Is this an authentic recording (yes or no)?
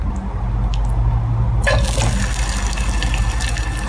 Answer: yes